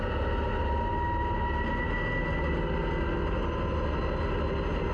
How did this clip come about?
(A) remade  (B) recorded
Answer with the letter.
B